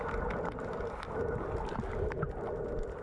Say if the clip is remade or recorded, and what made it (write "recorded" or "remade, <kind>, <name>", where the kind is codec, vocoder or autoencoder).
recorded